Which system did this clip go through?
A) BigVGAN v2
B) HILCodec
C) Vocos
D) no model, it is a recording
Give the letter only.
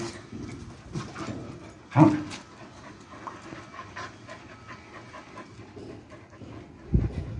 D